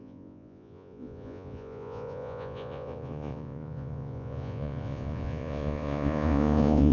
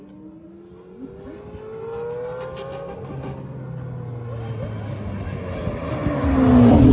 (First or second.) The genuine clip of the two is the second